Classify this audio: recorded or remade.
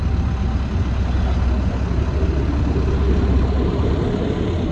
recorded